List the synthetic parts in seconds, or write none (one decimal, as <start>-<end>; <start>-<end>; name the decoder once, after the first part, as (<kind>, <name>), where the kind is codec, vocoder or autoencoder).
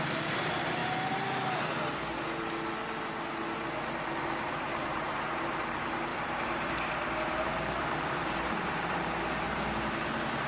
0.0-0.8 (vocoder, BigVGAN v2); 4.0-10.5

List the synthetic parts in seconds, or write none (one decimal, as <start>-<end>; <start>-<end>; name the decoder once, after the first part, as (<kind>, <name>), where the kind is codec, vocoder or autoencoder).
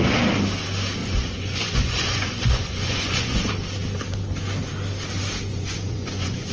1.0-3.5 (vocoder, Vocos); 5.5-6.5